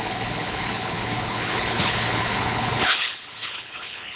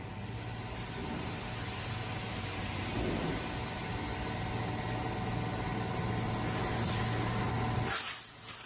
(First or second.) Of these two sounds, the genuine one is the second